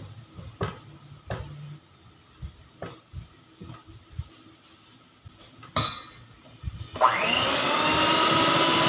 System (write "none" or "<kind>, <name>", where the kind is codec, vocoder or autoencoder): none